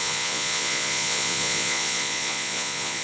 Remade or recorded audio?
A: remade